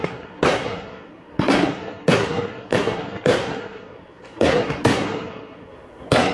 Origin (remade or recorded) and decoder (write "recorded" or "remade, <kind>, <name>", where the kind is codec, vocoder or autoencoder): remade, codec, SNAC